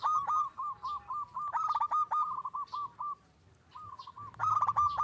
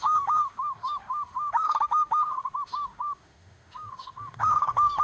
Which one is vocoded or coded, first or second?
second